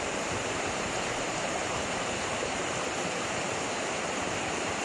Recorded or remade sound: remade